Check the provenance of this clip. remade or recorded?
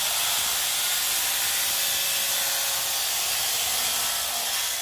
recorded